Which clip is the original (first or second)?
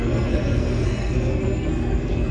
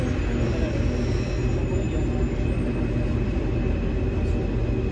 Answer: second